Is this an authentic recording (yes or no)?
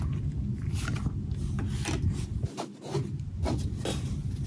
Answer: yes